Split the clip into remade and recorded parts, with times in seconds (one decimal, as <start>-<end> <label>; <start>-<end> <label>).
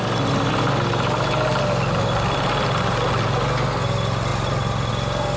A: 0.0-5.4 recorded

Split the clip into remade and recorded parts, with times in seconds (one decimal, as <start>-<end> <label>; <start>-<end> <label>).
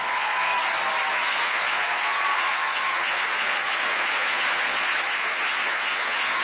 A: 0.0-0.5 remade; 0.5-1.1 recorded; 1.1-6.4 remade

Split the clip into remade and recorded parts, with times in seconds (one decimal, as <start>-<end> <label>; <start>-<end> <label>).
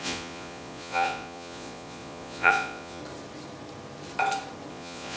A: 0.0-3.0 remade; 3.0-4.7 recorded; 4.7-5.2 remade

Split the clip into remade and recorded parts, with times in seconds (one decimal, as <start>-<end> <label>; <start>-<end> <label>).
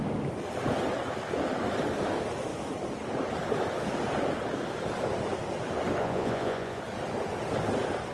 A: 0.0-6.0 recorded; 6.0-6.8 remade; 6.8-8.1 recorded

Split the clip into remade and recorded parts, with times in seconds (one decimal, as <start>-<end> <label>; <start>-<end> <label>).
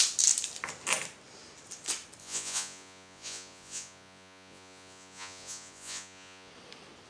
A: 0.0-2.2 recorded; 2.2-6.5 remade; 6.5-7.1 recorded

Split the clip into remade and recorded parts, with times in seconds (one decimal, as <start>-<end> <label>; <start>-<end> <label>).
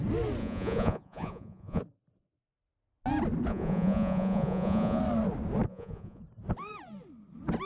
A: 0.0-0.4 recorded; 0.4-1.8 remade; 1.8-3.5 recorded; 3.5-5.0 remade; 5.0-5.7 recorded; 5.7-6.2 remade; 6.2-7.7 recorded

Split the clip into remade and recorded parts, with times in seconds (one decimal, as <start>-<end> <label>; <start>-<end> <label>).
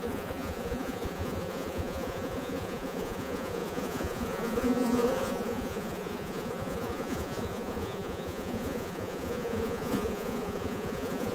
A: 0.0-11.3 remade